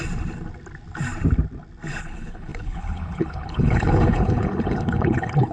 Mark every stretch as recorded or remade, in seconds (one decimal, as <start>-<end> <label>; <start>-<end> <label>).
0.0-2.0 recorded; 2.0-5.5 remade